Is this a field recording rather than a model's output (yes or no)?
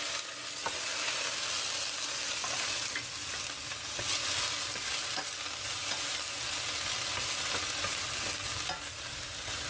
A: yes